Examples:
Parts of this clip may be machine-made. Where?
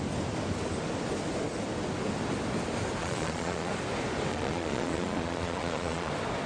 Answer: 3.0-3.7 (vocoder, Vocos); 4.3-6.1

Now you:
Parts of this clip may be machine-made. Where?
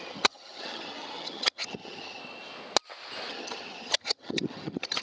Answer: 0.0-2.2 (vocoder, HiFi-GAN); 3.3-5.0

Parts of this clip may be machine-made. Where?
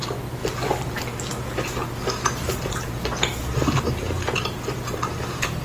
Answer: none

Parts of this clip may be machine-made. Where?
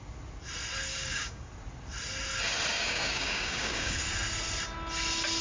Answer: 0.9-1.5 (codec, DAC); 2.7-4.0